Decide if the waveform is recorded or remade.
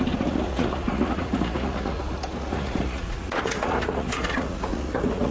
remade